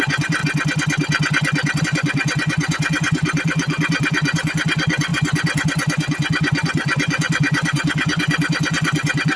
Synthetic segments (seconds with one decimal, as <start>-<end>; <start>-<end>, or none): 0.0-0.4; 1.8-9.4